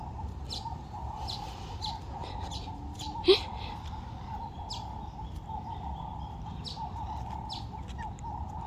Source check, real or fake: real